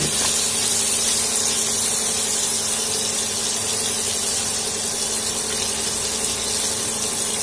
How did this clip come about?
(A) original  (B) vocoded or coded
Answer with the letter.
A